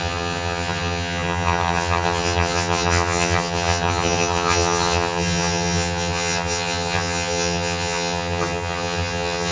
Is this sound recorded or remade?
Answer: remade